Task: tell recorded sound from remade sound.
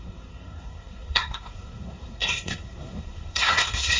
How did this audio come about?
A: remade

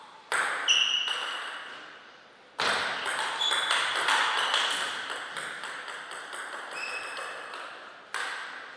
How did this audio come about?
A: recorded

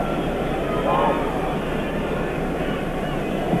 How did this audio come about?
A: recorded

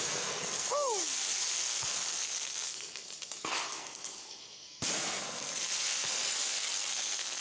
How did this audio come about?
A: remade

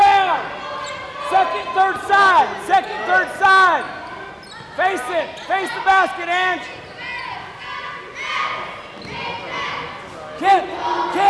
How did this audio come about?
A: recorded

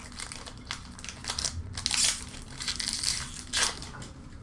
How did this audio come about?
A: recorded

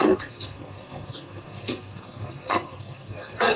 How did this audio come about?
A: remade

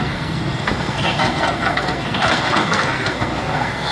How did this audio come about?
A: remade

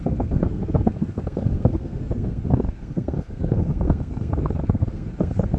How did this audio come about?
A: remade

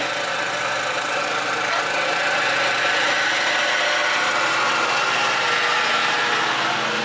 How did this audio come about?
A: recorded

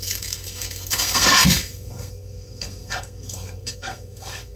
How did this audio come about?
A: remade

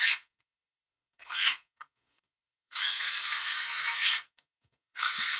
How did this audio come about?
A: remade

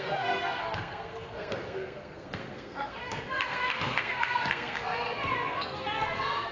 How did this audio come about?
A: remade